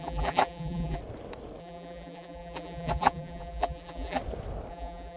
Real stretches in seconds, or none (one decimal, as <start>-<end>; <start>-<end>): 1.0-1.6; 4.2-4.7